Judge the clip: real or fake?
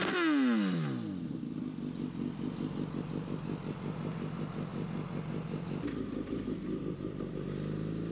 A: real